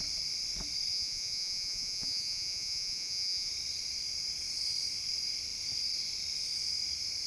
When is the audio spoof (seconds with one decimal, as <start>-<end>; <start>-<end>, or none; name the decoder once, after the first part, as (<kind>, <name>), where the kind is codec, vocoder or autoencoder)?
0.9-3.5 (vocoder, Vocos)